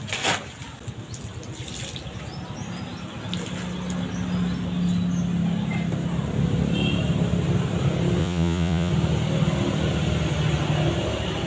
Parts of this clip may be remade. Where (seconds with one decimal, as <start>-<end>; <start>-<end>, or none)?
8.2-8.9